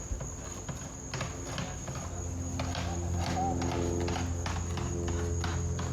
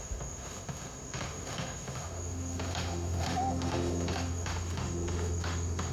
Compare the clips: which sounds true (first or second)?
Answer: first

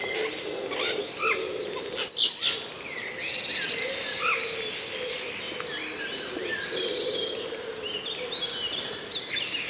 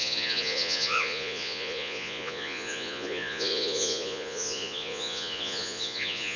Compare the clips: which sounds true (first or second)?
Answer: first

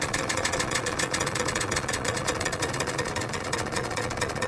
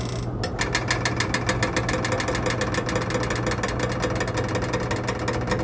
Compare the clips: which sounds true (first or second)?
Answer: second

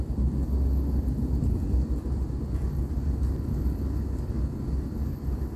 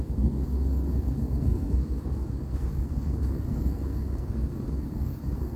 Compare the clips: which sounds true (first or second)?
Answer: first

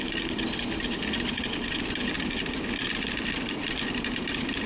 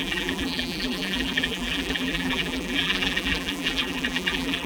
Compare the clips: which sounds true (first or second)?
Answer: first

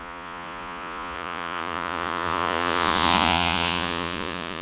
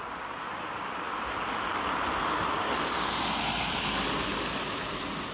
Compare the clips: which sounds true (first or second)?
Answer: second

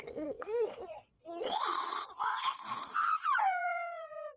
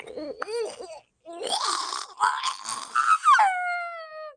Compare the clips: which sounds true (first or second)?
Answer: second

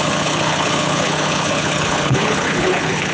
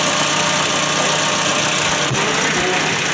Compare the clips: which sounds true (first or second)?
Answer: second